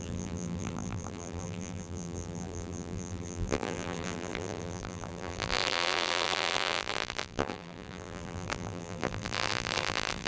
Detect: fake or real fake